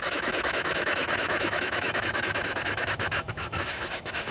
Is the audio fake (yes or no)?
yes